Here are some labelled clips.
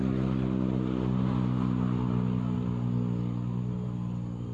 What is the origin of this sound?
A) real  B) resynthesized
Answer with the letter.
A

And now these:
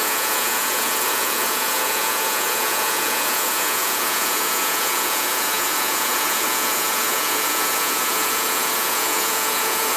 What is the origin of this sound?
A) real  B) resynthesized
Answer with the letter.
B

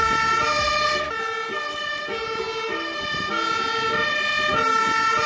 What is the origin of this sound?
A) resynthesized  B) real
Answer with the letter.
B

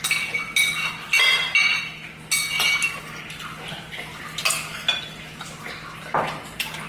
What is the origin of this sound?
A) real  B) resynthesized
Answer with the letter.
A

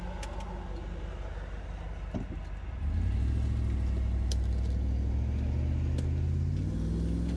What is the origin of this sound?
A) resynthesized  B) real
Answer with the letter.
B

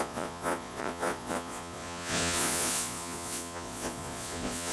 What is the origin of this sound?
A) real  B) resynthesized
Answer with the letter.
B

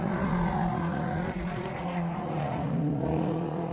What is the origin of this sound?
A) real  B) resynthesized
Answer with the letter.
B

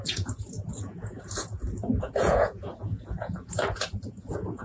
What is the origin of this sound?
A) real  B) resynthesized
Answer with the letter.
B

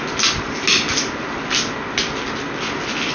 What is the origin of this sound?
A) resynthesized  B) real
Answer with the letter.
B